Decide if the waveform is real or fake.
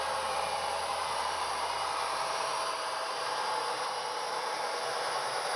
fake